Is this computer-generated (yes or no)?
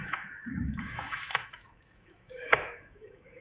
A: yes